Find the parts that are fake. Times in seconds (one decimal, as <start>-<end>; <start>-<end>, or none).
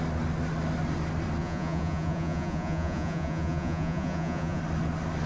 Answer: 1.4-4.6